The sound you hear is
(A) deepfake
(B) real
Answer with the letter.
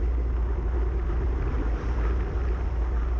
B